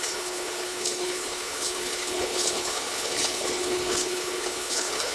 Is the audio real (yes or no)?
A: no